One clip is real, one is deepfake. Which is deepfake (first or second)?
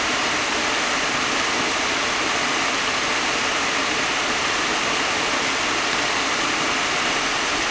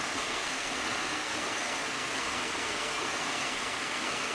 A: second